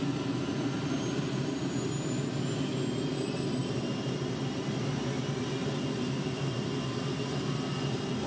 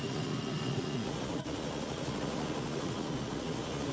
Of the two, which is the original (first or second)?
first